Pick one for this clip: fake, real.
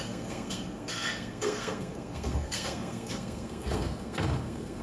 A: fake